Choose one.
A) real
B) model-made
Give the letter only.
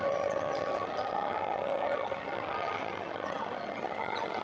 B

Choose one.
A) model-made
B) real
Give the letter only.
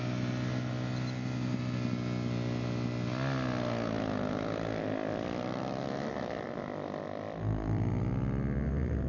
B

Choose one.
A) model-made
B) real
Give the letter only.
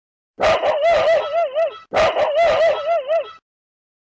B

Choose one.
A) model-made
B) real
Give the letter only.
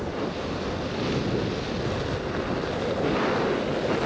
B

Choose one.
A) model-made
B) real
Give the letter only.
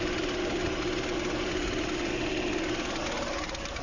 B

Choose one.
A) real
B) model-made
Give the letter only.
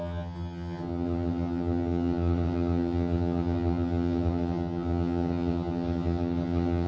B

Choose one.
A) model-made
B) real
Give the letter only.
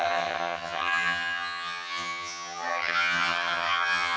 A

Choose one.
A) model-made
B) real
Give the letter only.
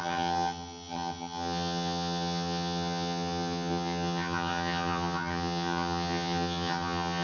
A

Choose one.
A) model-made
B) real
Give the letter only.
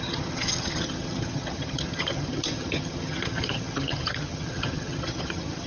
A